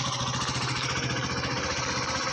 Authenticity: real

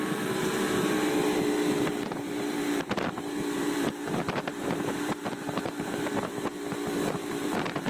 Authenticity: fake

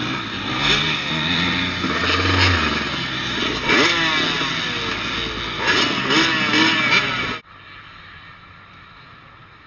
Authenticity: real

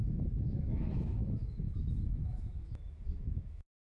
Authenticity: fake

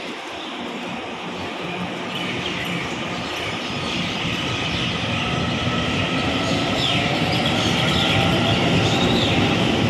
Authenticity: fake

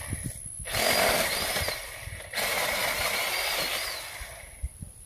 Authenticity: fake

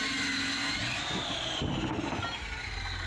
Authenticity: real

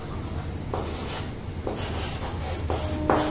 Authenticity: real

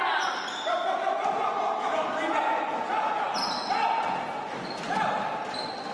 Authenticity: real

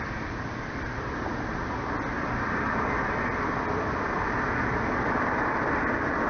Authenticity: real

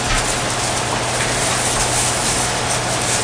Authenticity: real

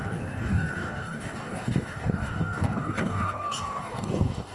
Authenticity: fake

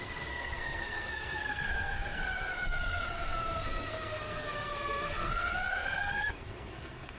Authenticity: fake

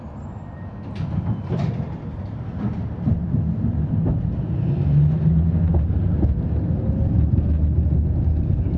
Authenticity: real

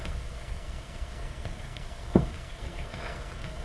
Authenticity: fake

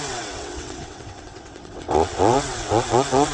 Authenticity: fake